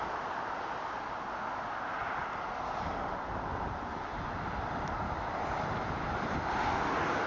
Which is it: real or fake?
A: real